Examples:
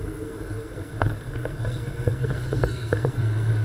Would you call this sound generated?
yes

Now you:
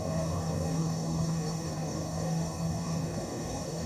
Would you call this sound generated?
yes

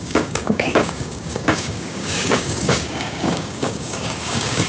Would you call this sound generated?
yes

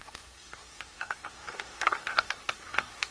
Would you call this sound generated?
yes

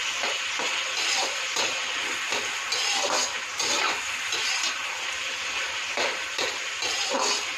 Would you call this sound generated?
no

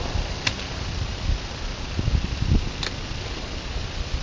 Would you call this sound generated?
no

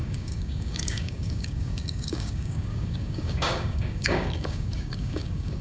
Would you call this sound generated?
yes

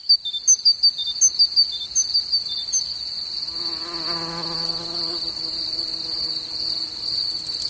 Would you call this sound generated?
no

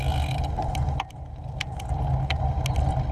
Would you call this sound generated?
no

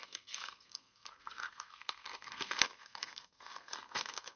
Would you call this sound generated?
yes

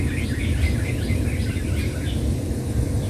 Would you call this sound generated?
no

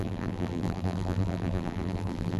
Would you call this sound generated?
yes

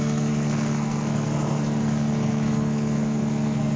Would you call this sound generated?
yes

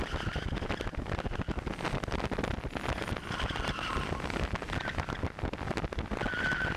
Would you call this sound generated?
no